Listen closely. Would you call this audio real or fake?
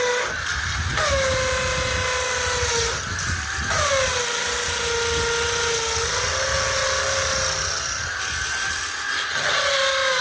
real